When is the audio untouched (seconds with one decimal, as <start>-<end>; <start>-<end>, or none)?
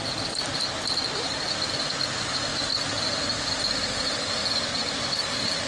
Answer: 0.0-5.7